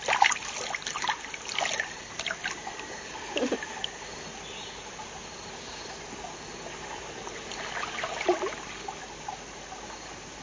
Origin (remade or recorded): recorded